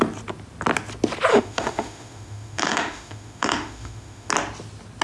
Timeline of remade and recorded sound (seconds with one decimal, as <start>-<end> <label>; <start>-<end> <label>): 0.0-1.3 recorded; 1.3-4.3 remade; 4.3-5.0 recorded